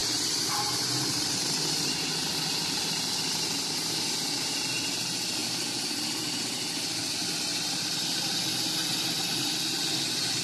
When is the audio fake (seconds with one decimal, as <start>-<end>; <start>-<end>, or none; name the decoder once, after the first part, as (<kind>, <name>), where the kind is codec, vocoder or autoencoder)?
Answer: 0.0-3.0 (vocoder, BigVGAN v2); 7.2-8.4